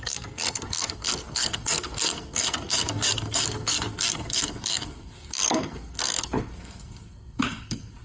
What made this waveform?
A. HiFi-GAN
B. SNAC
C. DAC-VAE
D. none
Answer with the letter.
B